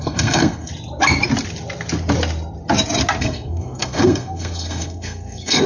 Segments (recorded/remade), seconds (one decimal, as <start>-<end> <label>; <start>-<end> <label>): 0.0-0.7 remade; 0.7-3.2 recorded; 3.2-5.7 remade